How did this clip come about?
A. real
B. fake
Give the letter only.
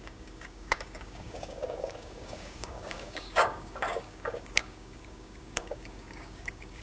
B